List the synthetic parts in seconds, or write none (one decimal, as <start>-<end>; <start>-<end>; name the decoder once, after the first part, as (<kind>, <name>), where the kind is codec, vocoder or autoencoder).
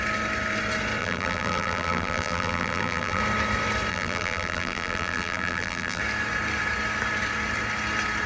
1.0-3.2 (vocoder, BigVGAN v2); 3.9-6.0